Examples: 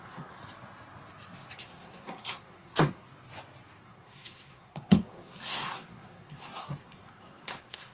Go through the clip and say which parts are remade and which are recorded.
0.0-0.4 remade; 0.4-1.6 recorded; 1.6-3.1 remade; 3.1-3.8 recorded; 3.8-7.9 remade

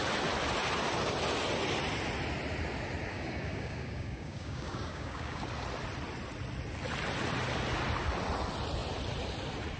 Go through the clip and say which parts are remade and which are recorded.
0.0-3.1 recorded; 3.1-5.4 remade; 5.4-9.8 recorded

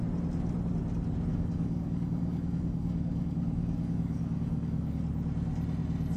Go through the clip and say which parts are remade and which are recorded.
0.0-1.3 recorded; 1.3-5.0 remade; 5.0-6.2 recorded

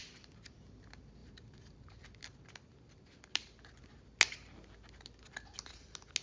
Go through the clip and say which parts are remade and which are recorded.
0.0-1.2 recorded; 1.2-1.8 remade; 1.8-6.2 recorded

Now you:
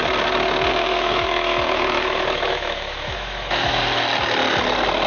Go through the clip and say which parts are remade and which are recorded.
0.0-0.7 recorded; 0.7-3.8 remade; 3.8-5.1 recorded

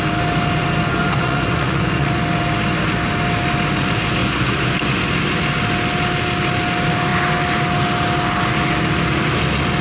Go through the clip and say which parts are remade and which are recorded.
0.0-0.9 recorded; 0.9-2.2 remade; 2.2-4.2 recorded; 4.2-5.0 remade; 5.0-9.8 recorded